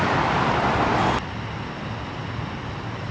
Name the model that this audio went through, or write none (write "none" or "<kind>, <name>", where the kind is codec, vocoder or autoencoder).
none